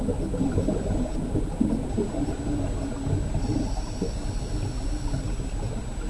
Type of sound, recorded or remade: recorded